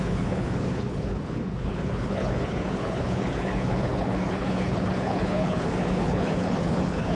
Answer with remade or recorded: remade